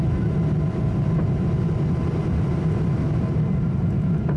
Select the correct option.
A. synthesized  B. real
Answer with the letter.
B